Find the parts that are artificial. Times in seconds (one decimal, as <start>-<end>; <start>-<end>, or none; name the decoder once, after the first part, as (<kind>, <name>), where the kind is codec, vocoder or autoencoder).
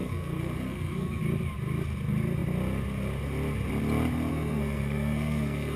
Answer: 0.0-1.2 (codec, SNAC); 4.3-5.8